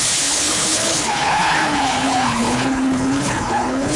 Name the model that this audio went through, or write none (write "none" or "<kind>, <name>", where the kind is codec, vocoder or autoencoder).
codec, HILCodec